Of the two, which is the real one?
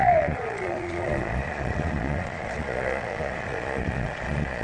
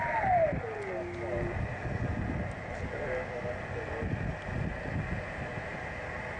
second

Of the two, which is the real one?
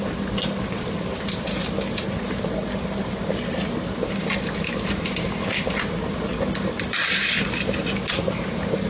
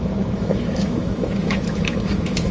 first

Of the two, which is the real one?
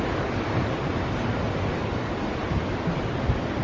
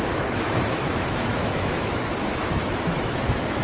first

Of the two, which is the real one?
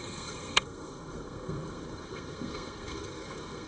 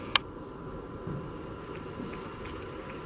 second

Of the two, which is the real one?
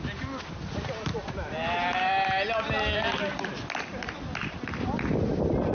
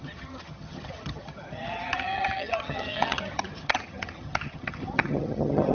first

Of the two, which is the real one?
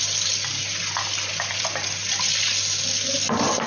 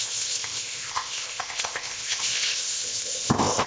first